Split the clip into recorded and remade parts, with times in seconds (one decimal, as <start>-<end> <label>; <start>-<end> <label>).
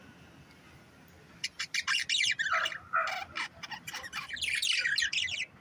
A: 0.0-3.2 recorded; 3.2-4.7 remade; 4.7-5.6 recorded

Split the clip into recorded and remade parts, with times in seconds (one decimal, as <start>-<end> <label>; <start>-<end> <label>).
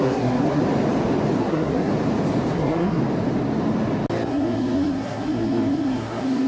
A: 0.0-0.6 remade; 0.6-1.4 recorded; 1.4-1.9 remade; 1.9-2.5 recorded; 2.5-3.0 remade; 3.0-4.3 recorded; 4.3-6.5 remade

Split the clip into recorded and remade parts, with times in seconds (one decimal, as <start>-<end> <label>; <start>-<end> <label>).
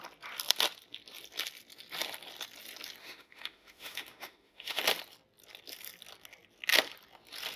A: 0.0-3.0 recorded; 3.0-4.8 remade; 4.8-7.6 recorded